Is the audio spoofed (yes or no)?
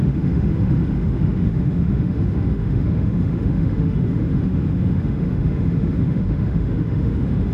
yes